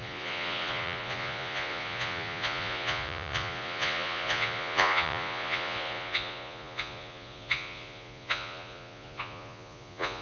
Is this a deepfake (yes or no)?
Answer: yes